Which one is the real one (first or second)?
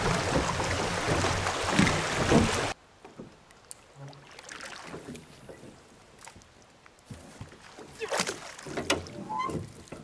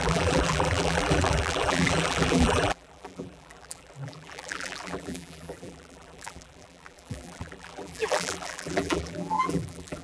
first